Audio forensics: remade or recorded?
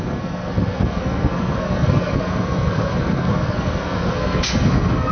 remade